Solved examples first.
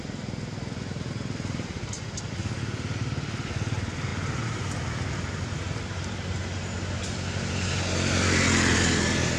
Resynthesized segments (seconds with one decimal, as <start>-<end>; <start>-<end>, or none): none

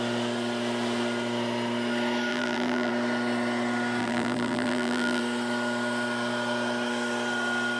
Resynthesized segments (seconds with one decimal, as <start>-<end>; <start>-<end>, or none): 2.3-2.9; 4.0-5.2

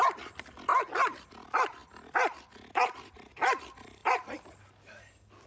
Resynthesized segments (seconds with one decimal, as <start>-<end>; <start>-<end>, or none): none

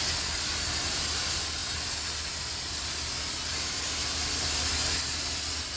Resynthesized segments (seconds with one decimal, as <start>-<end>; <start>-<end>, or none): none

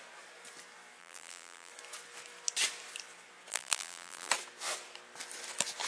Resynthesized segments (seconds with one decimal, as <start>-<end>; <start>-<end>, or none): 1.0-1.7; 3.5-4.3

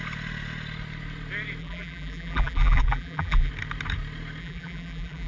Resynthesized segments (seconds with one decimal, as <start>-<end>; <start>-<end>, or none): 1.6-3.5; 4.4-5.3